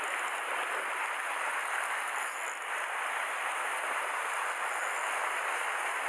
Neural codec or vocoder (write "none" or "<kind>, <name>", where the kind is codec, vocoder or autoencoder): none